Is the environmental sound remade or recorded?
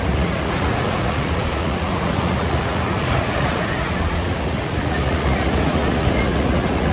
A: remade